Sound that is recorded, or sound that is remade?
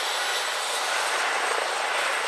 recorded